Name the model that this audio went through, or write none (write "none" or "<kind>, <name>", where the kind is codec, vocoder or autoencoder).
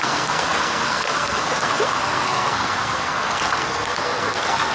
codec, SNAC